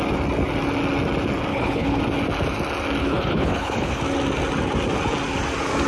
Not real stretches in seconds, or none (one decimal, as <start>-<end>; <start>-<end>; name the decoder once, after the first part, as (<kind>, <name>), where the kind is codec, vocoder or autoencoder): 1.5-2.0 (codec, HILCodec); 3.0-4.0